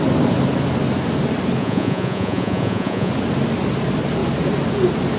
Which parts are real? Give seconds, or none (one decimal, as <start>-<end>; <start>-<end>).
0.0-1.6; 3.1-5.2